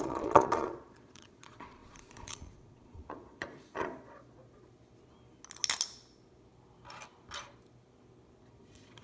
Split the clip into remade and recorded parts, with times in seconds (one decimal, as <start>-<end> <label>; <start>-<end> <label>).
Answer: 0.0-4.4 remade; 4.4-8.4 recorded; 8.4-9.0 remade